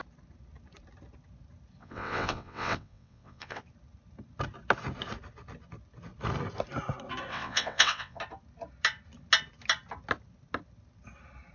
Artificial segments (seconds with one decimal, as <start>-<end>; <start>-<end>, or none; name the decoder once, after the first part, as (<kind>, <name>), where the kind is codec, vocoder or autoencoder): 1.8-3.6 (vocoder, WaveNeXt); 7.3-8.2